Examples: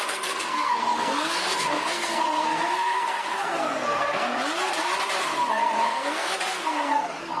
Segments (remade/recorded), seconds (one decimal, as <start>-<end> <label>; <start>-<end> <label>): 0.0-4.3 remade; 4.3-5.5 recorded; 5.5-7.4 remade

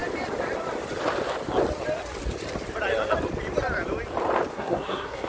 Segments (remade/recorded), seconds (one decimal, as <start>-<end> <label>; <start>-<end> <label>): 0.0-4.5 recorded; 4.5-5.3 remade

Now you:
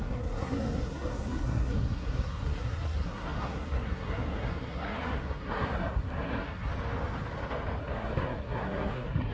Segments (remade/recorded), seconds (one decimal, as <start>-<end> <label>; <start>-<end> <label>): 0.0-6.7 remade; 6.7-7.8 recorded; 7.8-9.3 remade

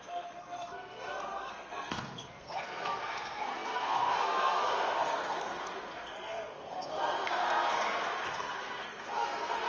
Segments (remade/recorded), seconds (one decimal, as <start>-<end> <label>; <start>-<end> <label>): 0.0-9.7 remade